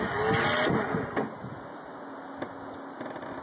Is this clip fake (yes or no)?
no